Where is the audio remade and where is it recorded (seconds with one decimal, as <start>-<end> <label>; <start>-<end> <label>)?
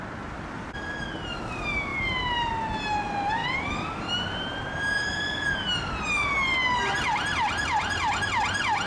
0.0-1.9 recorded; 1.9-2.5 remade; 2.5-3.4 recorded; 3.4-4.1 remade; 4.1-8.9 recorded